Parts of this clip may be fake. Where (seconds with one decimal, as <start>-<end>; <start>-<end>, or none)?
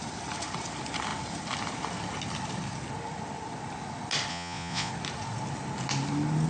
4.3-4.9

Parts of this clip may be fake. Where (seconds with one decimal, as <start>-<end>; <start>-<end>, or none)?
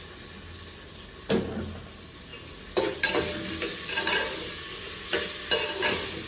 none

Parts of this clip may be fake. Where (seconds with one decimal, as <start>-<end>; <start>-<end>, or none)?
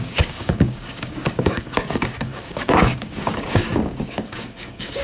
0.0-5.0